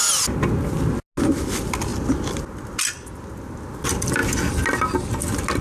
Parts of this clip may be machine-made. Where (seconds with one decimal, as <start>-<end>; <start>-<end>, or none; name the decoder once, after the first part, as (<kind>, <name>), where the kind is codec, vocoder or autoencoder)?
none